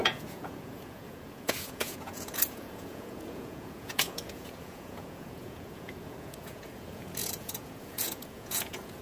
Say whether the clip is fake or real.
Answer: fake